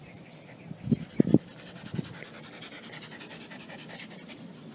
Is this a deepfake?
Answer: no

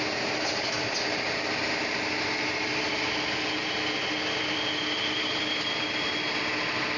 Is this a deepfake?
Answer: no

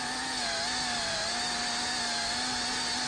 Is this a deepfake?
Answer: no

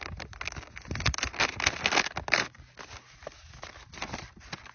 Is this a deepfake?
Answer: no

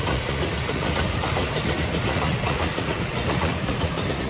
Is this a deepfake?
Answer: yes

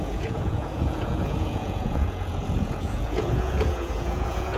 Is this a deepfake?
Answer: yes